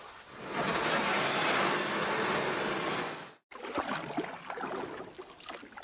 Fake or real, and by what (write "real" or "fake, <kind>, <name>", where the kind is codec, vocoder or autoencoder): real